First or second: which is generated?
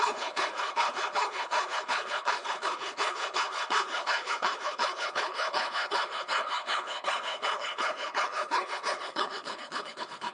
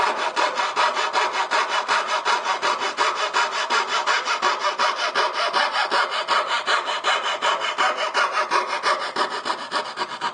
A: first